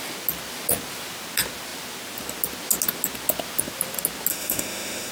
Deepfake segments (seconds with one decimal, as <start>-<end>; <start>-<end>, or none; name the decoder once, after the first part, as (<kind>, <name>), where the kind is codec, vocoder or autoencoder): 4.3-5.1 (autoencoder, DAC-VAE)